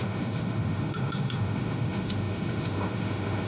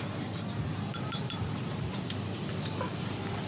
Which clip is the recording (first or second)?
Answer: second